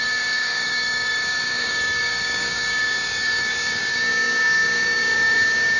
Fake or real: fake